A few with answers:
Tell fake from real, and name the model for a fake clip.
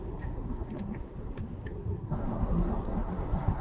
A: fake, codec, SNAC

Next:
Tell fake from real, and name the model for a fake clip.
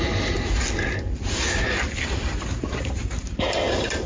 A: real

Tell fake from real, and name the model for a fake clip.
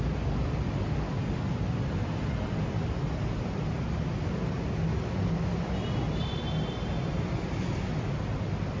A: real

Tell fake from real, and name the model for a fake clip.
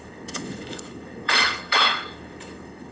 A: fake, codec, HILCodec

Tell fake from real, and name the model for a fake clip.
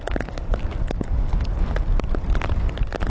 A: real